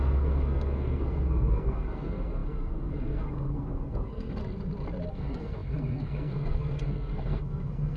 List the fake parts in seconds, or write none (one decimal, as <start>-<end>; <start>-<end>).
0.0-4.4; 5.1-8.0